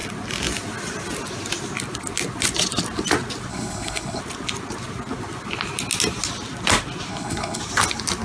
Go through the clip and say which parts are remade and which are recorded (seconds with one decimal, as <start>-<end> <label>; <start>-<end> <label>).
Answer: 0.0-3.5 recorded; 3.5-4.2 remade; 4.2-7.1 recorded; 7.1-7.6 remade; 7.6-8.2 recorded